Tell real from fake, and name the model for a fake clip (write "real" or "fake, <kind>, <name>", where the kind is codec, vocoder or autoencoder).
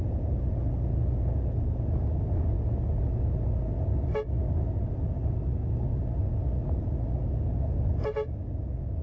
real